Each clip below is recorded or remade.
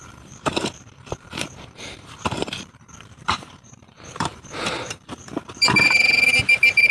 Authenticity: remade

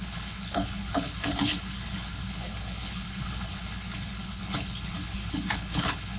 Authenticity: remade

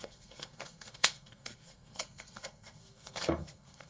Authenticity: remade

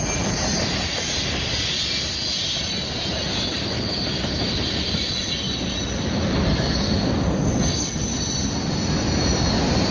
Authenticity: recorded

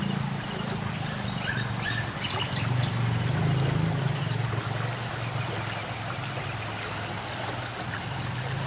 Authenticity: recorded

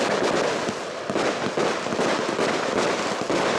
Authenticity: recorded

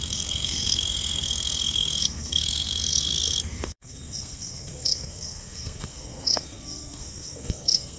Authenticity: remade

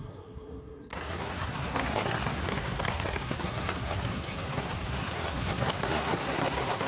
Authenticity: remade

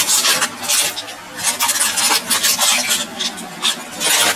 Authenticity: recorded